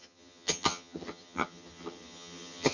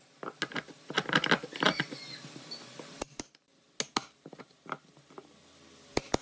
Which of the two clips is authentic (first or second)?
second